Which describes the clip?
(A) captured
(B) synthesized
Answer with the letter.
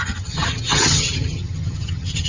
B